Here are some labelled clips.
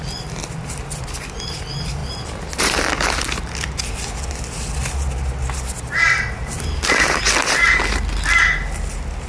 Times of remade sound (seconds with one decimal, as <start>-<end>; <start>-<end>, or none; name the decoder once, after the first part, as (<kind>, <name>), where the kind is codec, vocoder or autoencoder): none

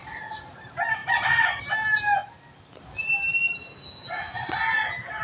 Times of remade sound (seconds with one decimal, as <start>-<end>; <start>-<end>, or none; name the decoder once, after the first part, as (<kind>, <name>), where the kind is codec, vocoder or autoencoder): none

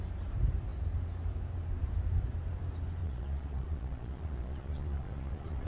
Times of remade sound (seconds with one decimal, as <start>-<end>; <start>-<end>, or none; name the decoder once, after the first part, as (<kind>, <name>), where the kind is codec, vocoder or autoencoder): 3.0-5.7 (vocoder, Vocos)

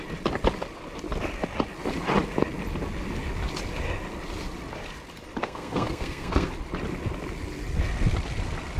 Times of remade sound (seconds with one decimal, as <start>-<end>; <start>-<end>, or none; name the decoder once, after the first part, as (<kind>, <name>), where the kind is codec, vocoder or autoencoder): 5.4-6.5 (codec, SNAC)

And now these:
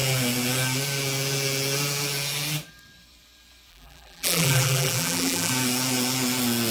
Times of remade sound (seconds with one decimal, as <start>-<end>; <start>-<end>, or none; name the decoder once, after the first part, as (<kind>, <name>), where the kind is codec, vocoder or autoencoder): 3.7-5.5 (vocoder, BigVGAN v2)

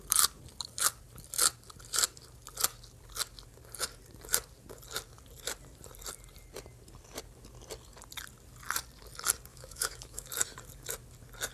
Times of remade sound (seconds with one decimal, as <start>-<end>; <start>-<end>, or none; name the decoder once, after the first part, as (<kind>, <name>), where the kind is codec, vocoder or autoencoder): 9.5-10.3 (autoencoder, DAC-VAE)

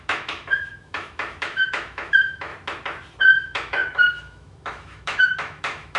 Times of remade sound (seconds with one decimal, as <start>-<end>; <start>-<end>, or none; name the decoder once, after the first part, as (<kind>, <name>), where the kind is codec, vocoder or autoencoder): 0.0-2.5 (autoencoder, DAC-VAE); 3.2-6.0

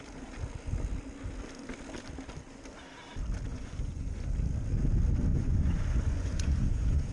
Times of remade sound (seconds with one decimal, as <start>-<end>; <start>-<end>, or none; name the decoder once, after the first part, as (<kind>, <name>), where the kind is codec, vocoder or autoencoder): 3.5-4.3 (vocoder, Vocos); 5.3-7.1